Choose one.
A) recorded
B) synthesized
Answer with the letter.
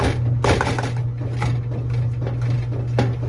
A